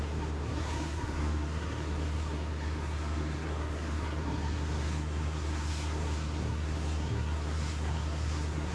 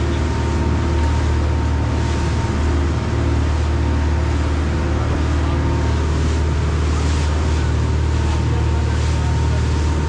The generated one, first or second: first